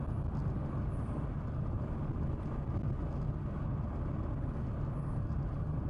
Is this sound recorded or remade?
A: recorded